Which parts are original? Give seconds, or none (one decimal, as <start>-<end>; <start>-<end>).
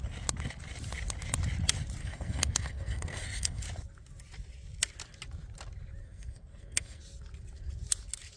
0.0-2.0; 3.6-6.0; 7.0-8.4